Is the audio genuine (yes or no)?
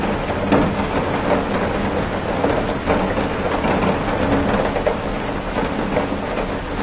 yes